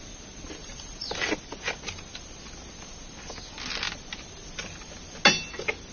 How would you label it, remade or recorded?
recorded